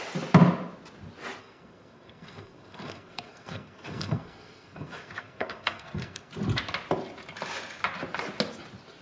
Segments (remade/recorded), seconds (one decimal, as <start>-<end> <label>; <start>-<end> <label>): 0.0-1.4 recorded; 1.4-6.3 remade; 6.3-9.0 recorded